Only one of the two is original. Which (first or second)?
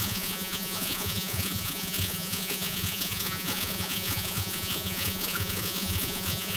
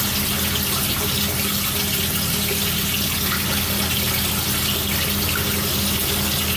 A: second